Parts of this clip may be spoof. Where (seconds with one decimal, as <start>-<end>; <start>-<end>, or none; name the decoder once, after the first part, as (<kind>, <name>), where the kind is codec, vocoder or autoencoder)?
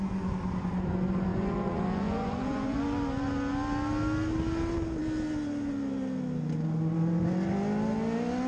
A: 1.3-2.8 (vocoder, Vocos)